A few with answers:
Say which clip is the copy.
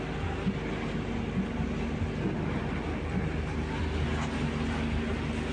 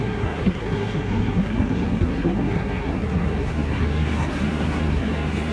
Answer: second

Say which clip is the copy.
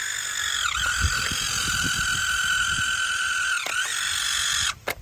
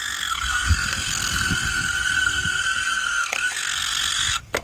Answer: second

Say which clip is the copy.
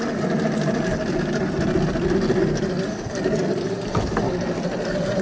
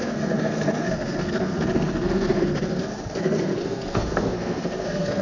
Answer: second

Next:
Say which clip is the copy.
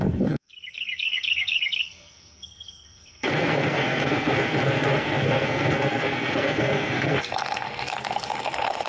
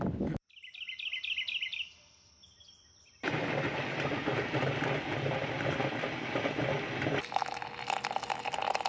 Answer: first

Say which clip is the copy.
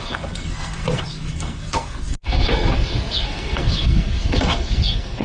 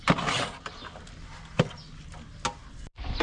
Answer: first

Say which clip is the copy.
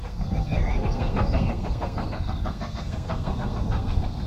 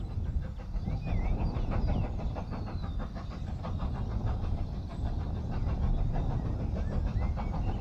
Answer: first